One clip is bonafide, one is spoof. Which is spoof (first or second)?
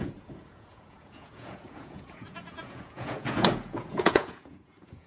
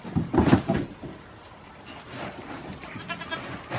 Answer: first